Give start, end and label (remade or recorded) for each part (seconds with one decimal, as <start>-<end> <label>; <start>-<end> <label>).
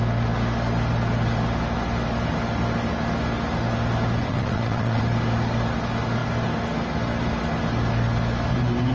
0.0-4.2 recorded; 4.2-5.0 remade; 5.0-8.9 recorded